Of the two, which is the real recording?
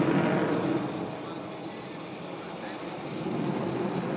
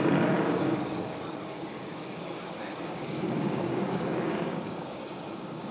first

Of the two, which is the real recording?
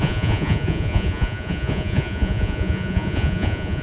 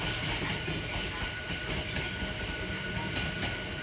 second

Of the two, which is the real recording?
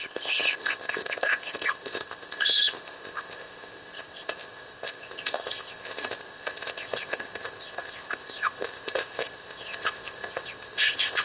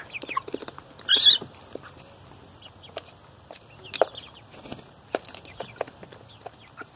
second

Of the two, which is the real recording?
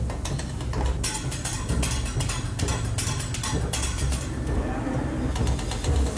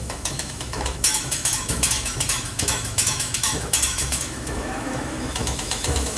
first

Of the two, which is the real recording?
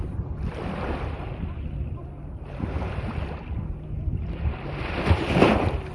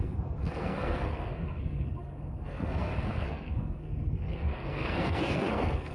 first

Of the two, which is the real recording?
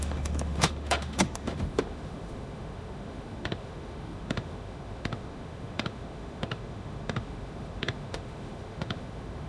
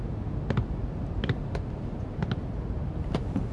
second